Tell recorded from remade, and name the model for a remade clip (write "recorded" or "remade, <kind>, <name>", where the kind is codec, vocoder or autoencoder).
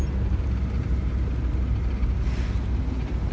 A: recorded